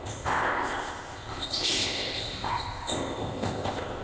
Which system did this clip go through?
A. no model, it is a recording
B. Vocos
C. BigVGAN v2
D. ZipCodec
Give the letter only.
D